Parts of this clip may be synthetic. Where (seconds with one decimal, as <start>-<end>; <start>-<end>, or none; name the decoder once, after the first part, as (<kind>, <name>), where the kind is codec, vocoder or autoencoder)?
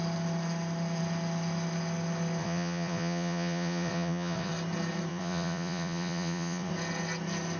2.4-4.5 (vocoder, Vocos); 5.1-6.7